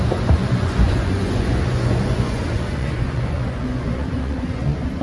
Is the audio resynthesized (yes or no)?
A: yes